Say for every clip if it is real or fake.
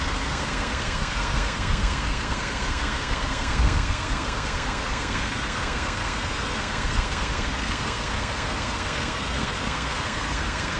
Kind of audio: fake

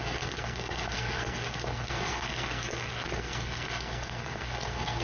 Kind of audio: fake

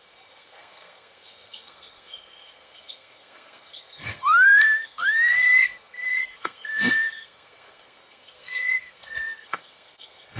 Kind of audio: fake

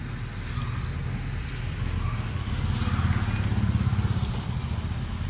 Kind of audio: real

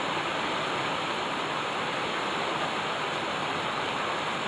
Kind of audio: real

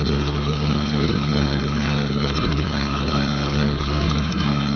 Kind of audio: fake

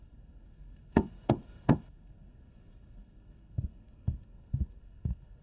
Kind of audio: fake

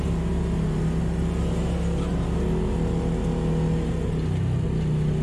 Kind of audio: real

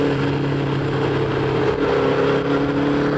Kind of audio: real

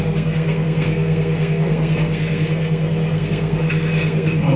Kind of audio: fake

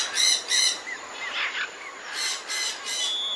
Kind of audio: real